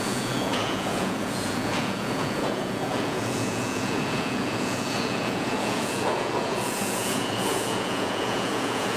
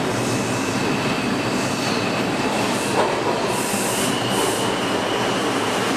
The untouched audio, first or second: second